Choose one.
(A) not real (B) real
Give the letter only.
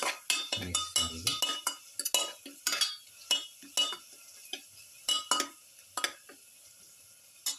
B